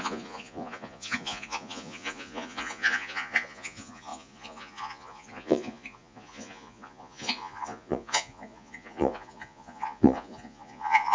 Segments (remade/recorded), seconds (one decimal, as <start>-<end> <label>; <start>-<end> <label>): 0.0-11.1 remade